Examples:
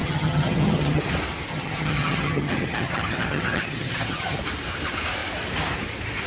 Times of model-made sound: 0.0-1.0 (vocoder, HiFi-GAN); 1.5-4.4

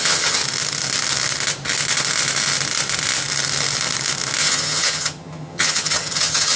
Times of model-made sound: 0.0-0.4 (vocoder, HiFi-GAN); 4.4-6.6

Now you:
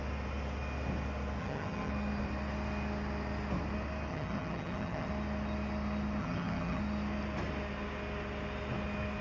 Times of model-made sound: 1.4-1.9 (vocoder, HiFi-GAN); 4.1-5.1; 6.2-6.8